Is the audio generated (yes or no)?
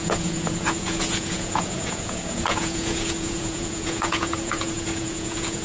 yes